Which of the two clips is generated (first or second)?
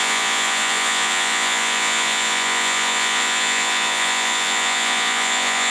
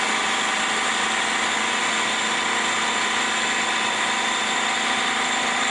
first